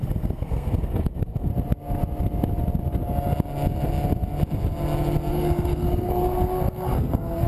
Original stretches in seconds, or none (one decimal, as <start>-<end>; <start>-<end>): 1.5-5.3